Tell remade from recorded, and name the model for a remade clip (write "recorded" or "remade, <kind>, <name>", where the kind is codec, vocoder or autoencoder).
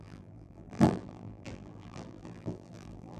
remade, vocoder, BigVGAN v2